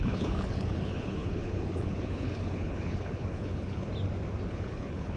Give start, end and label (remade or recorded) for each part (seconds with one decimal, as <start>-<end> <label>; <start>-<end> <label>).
0.0-3.9 remade; 3.9-4.5 recorded; 4.5-5.2 remade